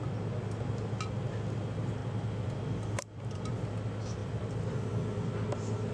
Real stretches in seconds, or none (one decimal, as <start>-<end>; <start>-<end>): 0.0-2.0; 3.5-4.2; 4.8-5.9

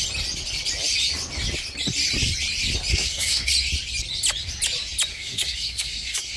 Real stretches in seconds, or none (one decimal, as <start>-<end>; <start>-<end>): 0.0-2.9; 3.5-5.1

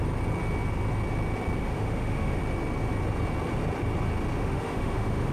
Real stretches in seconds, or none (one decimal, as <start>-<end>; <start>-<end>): 0.0-1.6; 2.4-4.4

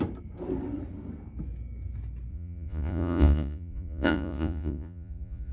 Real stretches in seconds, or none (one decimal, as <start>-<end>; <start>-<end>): 0.0-2.3

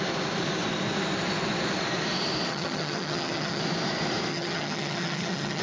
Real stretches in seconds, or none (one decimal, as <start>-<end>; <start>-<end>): 0.0-2.5; 3.6-4.3